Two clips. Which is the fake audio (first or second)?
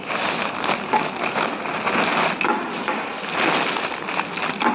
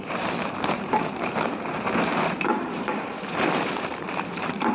second